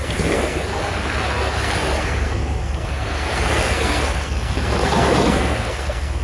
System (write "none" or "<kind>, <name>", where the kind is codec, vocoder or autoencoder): codec, SNAC